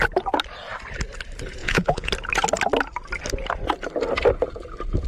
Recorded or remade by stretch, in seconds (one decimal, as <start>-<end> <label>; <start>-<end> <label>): 0.0-1.6 recorded; 1.6-2.1 remade; 2.1-5.1 recorded